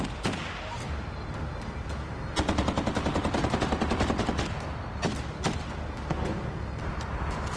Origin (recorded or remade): recorded